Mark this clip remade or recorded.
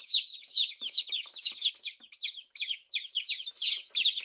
remade